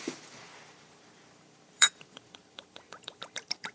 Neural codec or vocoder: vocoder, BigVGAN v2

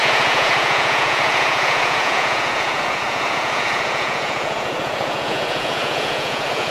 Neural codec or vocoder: vocoder, Vocos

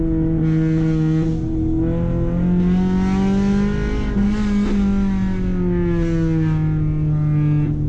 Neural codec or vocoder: none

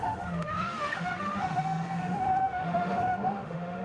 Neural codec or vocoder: autoencoder, DAC-VAE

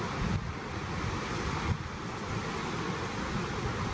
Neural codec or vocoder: none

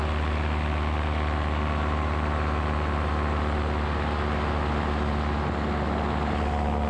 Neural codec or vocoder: none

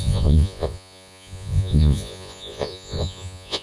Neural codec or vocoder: vocoder, Vocos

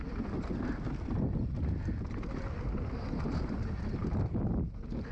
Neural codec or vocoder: none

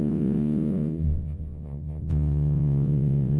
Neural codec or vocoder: vocoder, Vocos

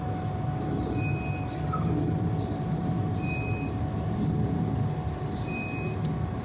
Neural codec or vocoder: none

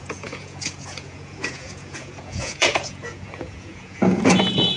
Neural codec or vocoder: vocoder, Vocos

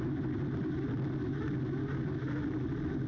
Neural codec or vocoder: none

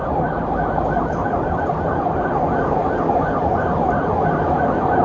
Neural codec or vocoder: none